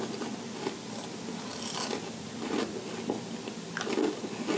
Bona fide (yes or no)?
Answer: yes